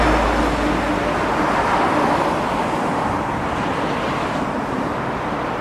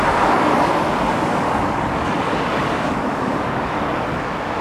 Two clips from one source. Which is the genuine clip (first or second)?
first